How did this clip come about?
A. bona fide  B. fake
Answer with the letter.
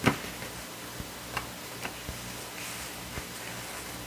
A